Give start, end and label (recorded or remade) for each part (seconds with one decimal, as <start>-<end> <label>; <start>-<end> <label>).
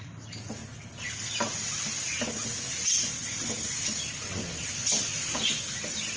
0.0-6.2 recorded